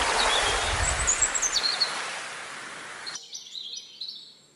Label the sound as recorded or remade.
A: recorded